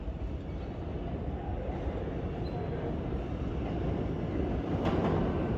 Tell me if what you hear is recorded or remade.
recorded